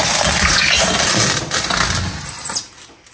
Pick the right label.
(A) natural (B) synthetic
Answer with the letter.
A